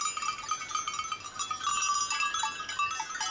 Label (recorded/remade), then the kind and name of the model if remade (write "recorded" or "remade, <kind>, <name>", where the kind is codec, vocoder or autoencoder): recorded